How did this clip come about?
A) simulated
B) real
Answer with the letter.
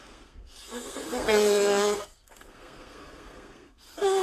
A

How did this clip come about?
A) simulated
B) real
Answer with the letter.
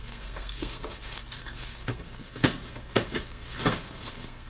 A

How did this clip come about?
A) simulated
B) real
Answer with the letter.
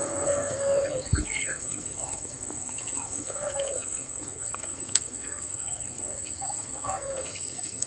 A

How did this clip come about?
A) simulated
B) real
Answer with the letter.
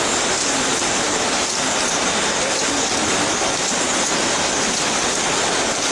B